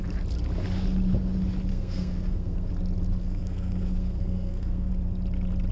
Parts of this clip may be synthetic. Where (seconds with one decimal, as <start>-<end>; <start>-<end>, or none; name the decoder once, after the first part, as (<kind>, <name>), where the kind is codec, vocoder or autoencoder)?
1.7-2.7 (codec, SNAC); 3.2-4.9